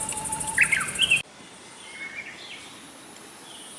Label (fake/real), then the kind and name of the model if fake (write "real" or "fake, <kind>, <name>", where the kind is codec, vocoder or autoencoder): real